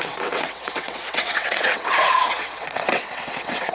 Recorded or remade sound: remade